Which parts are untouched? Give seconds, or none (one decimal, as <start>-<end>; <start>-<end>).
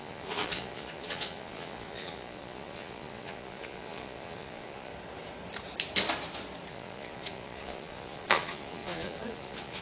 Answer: 4.9-6.7